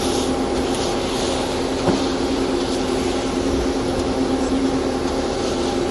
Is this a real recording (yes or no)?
yes